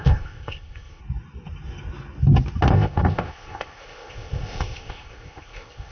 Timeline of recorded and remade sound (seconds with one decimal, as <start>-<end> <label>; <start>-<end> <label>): 0.0-1.0 remade; 1.0-2.7 recorded; 2.7-5.9 remade